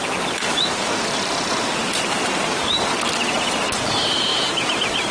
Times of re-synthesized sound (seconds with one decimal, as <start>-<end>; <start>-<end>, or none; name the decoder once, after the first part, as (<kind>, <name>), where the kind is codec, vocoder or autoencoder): 0.0-5.1 (vocoder, BigVGAN v2)